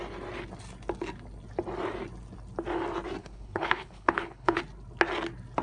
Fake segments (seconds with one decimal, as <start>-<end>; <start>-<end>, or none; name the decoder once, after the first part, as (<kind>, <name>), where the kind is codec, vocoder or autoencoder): 3.2-4.6 (codec, HILCodec)

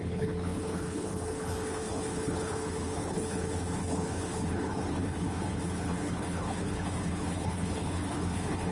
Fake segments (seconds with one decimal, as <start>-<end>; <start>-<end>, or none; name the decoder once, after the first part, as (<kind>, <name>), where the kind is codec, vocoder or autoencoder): 0.0-8.7 (codec, HILCodec)

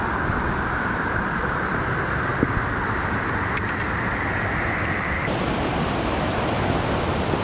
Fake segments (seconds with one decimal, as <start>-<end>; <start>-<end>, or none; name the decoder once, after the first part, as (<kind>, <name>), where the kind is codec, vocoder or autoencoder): none